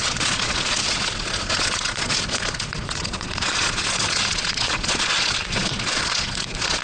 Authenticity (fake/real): fake